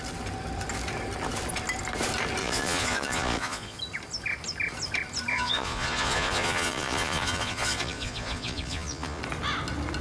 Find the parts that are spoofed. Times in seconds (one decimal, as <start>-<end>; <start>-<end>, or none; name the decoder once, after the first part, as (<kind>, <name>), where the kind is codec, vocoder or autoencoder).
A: 2.4-3.8 (vocoder, Vocos); 5.3-9.2

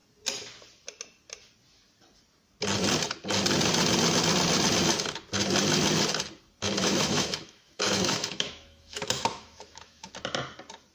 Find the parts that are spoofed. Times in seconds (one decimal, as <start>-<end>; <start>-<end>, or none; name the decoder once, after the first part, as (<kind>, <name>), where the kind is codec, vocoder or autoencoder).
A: 6.8-10.1 (autoencoder, DAC-VAE)